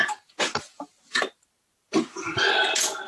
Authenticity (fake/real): real